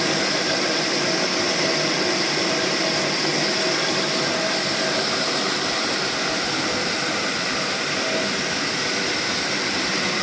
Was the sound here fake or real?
real